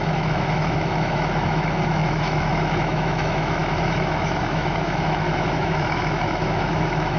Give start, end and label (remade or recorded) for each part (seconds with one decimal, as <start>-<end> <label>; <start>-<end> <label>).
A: 0.0-7.2 remade